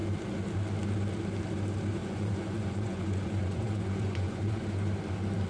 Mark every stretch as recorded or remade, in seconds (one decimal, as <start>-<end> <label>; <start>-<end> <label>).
0.0-2.0 recorded; 2.0-4.6 remade; 4.6-5.5 recorded